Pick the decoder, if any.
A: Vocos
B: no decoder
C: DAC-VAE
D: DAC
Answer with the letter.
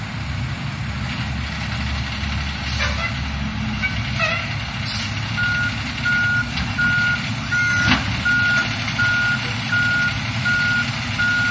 B